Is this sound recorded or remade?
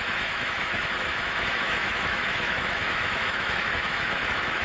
remade